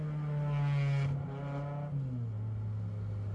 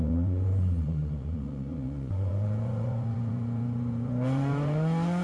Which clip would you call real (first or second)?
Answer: first